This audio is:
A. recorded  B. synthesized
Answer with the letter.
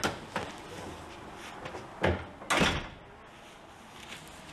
A